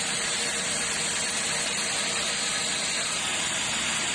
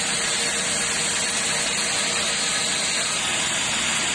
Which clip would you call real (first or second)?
second